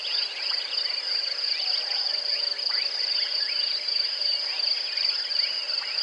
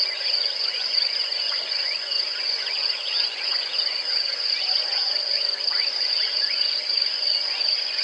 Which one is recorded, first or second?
first